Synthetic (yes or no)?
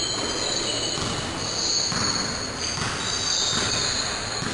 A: no